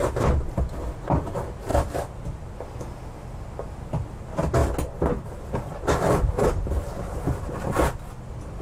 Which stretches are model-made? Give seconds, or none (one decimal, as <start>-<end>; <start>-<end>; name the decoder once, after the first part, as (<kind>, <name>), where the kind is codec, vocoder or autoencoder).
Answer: none